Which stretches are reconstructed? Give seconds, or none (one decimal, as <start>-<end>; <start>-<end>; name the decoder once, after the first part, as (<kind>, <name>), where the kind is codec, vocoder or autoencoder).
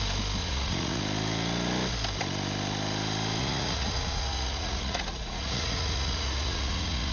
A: 0.4-1.0 (vocoder, Vocos); 3.4-7.1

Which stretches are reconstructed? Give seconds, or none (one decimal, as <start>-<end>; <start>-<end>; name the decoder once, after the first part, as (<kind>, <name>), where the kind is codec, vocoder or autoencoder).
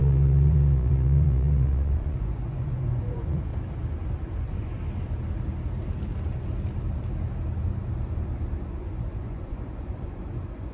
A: 0.0-3.5 (vocoder, Vocos); 4.2-4.8; 8.6-10.7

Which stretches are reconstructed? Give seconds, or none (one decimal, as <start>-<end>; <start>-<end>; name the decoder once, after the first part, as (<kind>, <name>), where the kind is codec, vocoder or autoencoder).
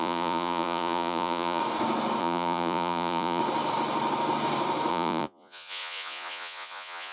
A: 0.0-1.6 (vocoder, Vocos); 2.2-3.4; 4.9-7.1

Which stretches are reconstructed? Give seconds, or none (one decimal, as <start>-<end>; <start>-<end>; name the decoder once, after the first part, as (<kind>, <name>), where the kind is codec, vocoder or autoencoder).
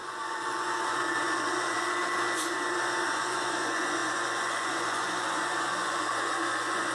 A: 0.0-6.9 (vocoder, Vocos)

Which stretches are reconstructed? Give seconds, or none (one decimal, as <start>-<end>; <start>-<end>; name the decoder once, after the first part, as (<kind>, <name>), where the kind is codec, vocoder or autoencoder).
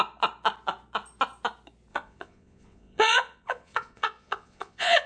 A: 1.9-5.1 (vocoder, Vocos)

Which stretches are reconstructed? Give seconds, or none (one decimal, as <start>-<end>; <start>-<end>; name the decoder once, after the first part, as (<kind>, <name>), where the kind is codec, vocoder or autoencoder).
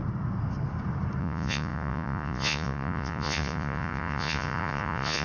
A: 1.2-5.2 (vocoder, Vocos)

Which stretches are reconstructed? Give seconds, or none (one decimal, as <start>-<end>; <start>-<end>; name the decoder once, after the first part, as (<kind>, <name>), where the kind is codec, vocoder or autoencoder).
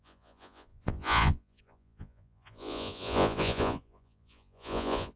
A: 0.0-5.2 (vocoder, Vocos)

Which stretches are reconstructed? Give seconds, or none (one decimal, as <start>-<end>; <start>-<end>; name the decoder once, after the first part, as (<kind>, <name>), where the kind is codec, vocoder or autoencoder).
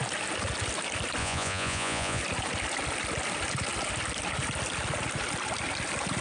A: 1.2-2.2 (vocoder, Vocos)